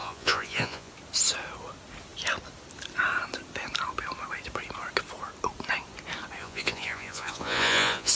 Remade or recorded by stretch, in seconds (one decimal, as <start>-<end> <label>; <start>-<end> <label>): 0.0-0.9 remade; 0.9-6.4 recorded; 6.4-8.1 remade